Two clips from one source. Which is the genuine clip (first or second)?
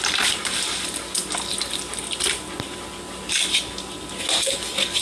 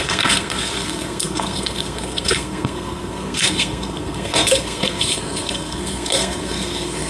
first